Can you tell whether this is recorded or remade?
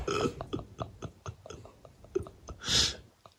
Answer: remade